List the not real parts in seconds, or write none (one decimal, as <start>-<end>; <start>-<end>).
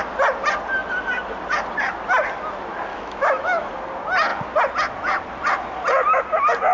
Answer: 2.9-3.7